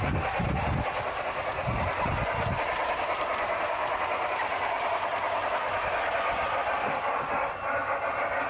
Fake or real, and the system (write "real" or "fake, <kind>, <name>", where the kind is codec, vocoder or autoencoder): real